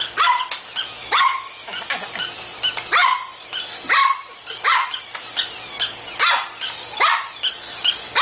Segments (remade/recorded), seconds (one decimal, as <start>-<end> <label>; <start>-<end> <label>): 0.0-1.0 recorded; 1.0-1.7 remade; 1.7-8.2 recorded